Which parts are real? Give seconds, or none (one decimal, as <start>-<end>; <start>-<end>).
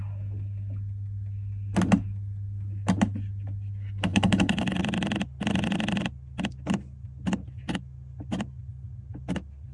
0.0-4.1; 4.8-9.7